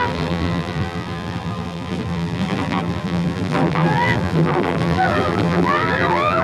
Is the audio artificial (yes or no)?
yes